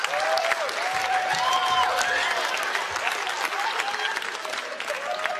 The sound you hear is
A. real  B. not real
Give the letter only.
A